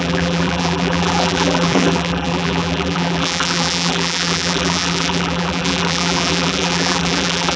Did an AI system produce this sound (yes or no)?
yes